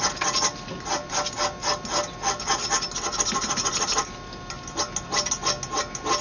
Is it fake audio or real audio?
real